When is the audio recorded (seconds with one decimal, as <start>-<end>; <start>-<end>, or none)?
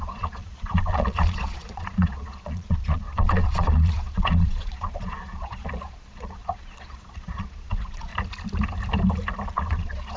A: 8.1-9.5